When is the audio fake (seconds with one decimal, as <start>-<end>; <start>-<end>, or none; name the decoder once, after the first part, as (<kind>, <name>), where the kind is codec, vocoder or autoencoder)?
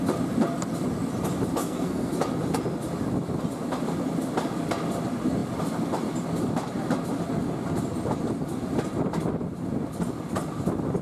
1.6-2.1 (codec, SNAC)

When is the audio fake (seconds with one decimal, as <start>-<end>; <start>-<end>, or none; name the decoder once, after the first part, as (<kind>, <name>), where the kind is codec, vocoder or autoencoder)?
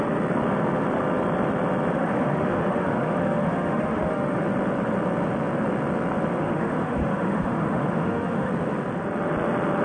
1.9-4.4 (autoencoder, DAC-VAE); 6.4-8.5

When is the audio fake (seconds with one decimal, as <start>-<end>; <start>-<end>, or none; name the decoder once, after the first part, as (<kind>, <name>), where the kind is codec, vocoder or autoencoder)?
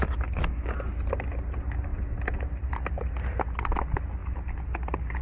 none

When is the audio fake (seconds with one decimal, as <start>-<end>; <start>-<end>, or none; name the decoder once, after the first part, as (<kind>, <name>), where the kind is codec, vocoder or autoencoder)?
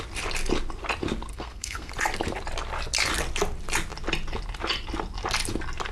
1.3-1.9 (codec, SNAC)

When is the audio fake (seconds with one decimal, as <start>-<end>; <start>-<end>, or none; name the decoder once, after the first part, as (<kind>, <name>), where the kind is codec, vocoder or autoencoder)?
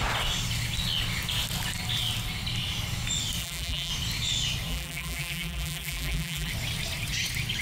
3.4-3.9 (vocoder, BigVGAN v2); 4.7-6.5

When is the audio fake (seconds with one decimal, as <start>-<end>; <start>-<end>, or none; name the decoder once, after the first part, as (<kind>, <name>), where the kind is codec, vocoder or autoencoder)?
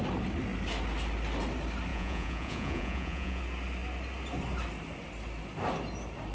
1.9-3.4 (vocoder, Vocos)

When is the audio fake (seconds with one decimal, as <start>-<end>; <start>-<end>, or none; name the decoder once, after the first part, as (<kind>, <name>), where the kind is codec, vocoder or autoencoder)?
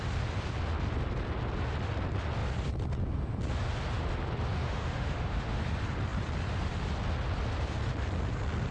4.5-5.6 (autoencoder, DAC-VAE)